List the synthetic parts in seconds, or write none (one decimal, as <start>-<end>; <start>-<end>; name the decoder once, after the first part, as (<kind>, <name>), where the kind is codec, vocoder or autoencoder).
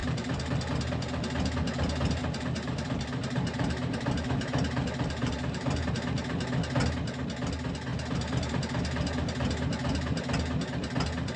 0.0-0.7 (vocoder, BigVGAN v2); 2.2-5.9; 7.9-8.6